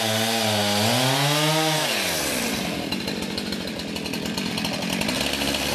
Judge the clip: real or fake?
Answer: real